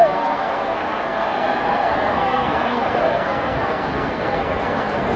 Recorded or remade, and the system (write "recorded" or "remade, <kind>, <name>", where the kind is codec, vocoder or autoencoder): remade, codec, SNAC